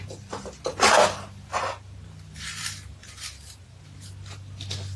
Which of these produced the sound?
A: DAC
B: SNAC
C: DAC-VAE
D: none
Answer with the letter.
D